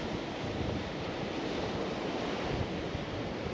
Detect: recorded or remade recorded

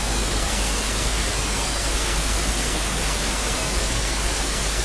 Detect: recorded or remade remade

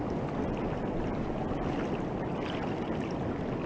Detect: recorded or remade recorded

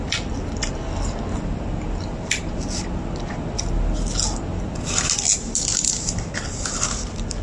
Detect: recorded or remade recorded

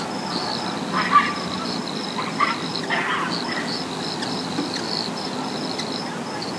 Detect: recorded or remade recorded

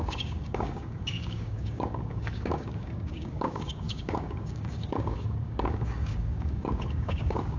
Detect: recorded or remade remade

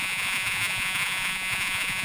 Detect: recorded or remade remade